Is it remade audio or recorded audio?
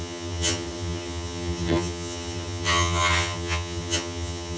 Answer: remade